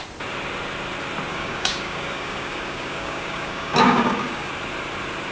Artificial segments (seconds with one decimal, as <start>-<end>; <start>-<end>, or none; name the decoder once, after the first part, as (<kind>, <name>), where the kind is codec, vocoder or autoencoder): 1.3-4.5 (codec, DAC)